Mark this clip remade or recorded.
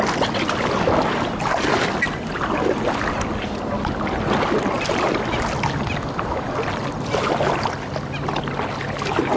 recorded